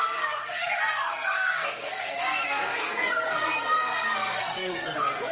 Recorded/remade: remade